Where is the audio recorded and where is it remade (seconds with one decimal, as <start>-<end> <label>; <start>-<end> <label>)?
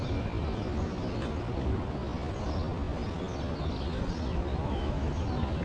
0.0-4.5 recorded; 4.5-5.1 remade; 5.1-5.6 recorded